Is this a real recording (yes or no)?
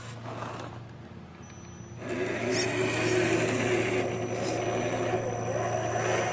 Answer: yes